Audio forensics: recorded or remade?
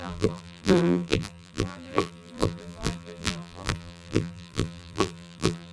remade